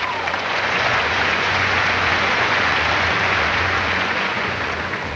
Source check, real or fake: fake